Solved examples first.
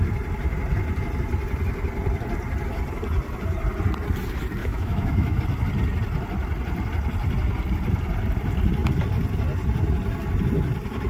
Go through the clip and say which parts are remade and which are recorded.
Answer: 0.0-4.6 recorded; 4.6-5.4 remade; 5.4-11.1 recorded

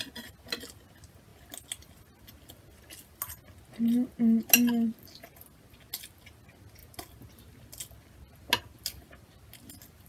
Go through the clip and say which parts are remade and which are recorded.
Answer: 0.0-10.1 recorded

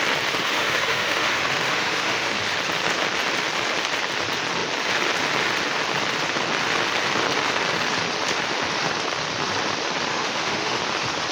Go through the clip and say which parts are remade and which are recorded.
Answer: 0.0-0.4 recorded; 0.4-2.3 remade; 2.3-10.1 recorded; 10.1-10.8 remade; 10.8-11.3 recorded